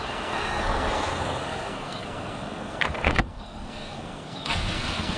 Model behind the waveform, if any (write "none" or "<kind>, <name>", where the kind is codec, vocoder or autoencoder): codec, SNAC